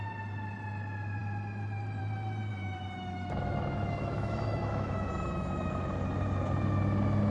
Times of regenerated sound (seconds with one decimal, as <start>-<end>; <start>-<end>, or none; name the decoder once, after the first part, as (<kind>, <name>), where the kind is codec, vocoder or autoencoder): 2.5-5.7 (autoencoder, DAC-VAE)